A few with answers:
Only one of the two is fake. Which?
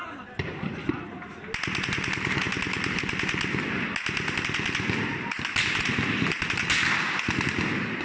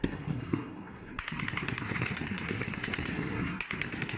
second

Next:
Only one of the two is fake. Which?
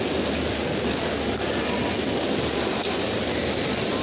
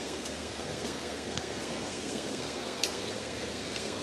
second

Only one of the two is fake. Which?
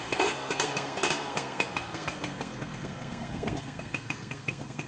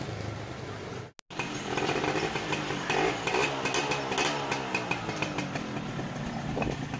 first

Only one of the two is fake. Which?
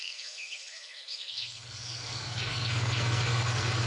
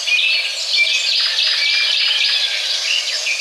first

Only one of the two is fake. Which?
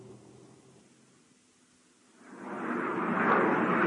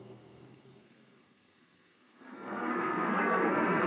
second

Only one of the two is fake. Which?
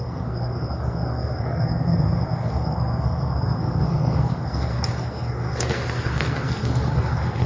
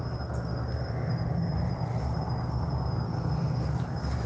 first